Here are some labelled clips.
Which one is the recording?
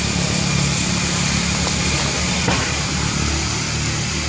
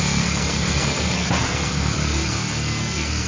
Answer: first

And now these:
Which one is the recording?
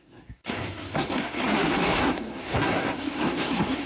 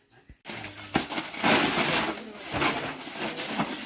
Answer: second